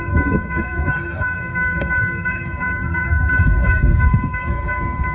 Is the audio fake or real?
fake